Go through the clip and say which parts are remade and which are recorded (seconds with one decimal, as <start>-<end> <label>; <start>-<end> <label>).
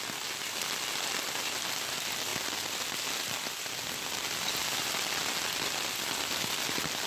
0.0-7.1 recorded